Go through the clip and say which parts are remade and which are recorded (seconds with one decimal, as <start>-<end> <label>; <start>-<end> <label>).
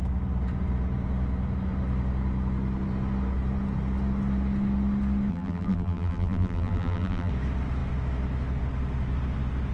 0.0-5.3 recorded; 5.3-7.3 remade; 7.3-9.7 recorded